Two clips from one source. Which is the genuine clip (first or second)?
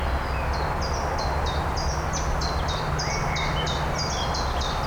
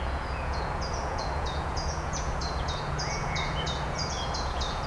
first